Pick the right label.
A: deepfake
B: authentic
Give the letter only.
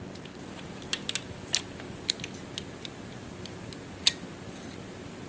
B